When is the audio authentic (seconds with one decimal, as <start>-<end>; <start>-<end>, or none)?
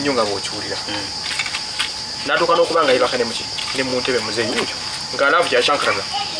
0.0-0.5; 3.2-6.4